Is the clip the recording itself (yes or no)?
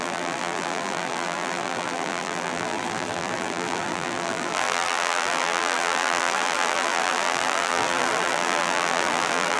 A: no